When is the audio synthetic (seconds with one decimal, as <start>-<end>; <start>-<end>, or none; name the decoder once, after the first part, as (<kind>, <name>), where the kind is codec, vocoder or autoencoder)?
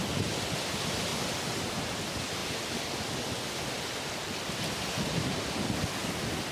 none